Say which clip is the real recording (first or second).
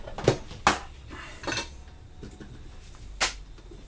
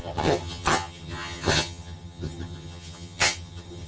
first